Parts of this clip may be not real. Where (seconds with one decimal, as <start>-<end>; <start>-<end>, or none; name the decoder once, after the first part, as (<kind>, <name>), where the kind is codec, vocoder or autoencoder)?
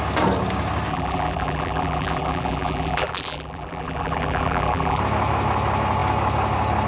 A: 0.9-5.0 (vocoder, BigVGAN v2)